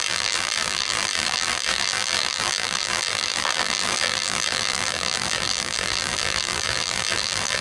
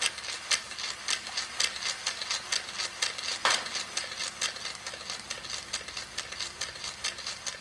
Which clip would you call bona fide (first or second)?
second